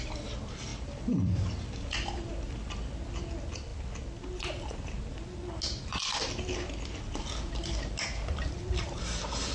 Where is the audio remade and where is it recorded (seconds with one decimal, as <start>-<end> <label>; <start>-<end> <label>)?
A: 0.0-0.7 recorded; 0.7-2.3 remade; 2.3-9.5 recorded